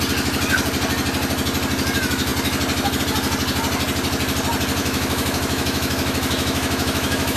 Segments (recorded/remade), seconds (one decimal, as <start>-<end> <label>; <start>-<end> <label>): 0.0-4.8 recorded; 4.8-7.4 remade